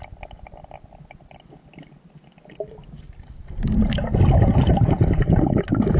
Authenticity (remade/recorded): recorded